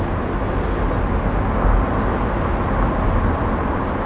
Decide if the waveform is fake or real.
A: real